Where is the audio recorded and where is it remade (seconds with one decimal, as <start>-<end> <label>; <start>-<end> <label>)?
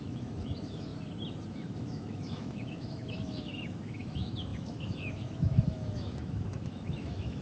0.0-0.9 remade; 0.9-1.5 recorded; 1.5-7.4 remade